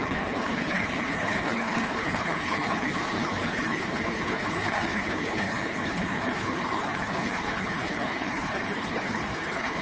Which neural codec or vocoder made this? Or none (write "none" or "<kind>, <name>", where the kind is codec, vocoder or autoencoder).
codec, HILCodec